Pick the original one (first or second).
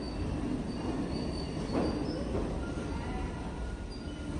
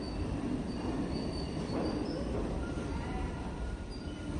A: first